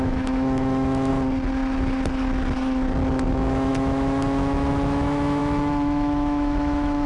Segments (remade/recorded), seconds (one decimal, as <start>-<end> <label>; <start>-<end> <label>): 0.0-1.1 remade; 1.1-3.3 recorded; 3.3-7.1 remade